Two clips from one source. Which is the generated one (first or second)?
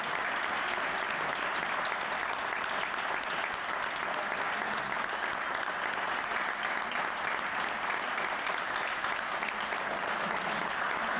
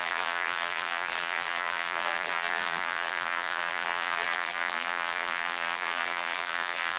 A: second